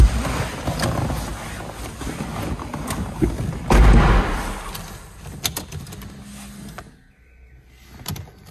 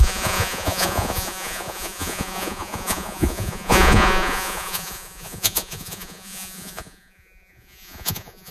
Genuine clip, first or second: first